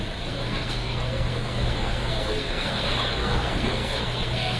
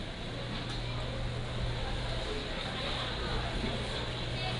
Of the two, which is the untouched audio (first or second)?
second